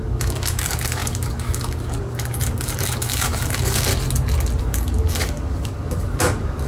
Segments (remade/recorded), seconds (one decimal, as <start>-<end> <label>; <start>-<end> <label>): 0.0-3.9 remade; 3.9-4.6 recorded; 4.6-6.7 remade